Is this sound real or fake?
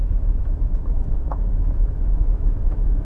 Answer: fake